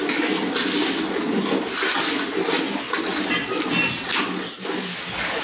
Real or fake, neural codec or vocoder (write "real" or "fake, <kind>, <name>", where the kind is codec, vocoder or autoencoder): real